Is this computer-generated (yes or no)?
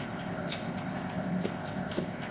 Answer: yes